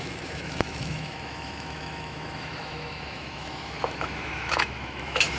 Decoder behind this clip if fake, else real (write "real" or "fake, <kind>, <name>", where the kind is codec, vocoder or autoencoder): fake, autoencoder, DAC-VAE